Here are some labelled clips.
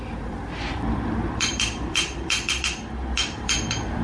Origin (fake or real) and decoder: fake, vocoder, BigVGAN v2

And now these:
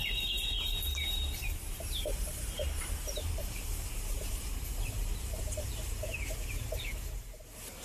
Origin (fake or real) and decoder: fake, vocoder, BigVGAN v2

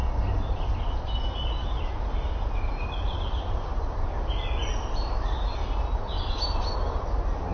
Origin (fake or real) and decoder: real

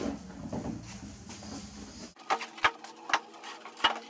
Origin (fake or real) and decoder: real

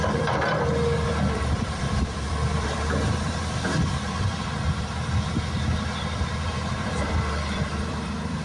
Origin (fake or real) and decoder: fake, vocoder, BigVGAN v2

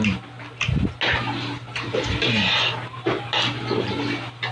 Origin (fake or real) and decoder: real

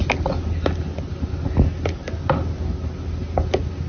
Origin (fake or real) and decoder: real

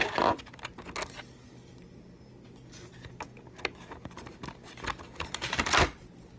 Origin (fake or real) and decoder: real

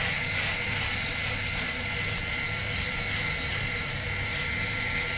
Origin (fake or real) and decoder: fake, vocoder, BigVGAN v2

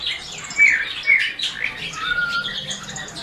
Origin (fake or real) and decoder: real